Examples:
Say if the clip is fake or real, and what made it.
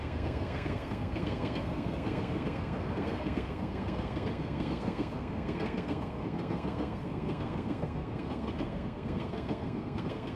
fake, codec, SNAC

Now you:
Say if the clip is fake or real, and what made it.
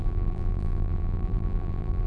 fake, vocoder, BigVGAN v2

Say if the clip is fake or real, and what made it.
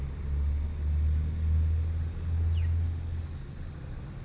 real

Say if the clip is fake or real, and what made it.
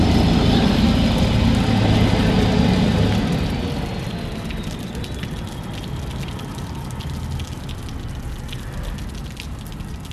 real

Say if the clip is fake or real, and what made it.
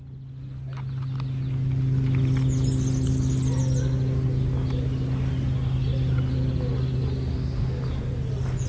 real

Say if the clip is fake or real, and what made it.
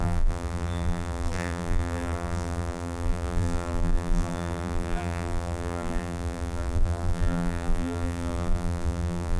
fake, vocoder, BigVGAN v2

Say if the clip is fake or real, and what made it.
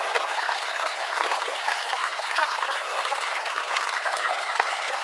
fake, codec, SNAC